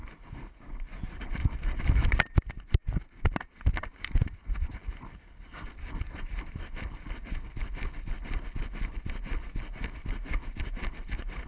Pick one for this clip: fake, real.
real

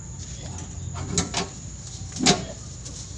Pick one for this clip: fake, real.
real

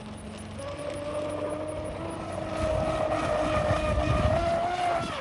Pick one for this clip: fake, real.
real